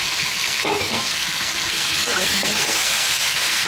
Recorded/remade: remade